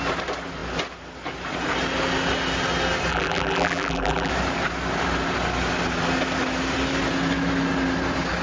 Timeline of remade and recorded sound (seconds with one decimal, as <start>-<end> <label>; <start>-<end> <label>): 0.0-3.1 recorded; 3.1-4.3 remade; 4.3-8.4 recorded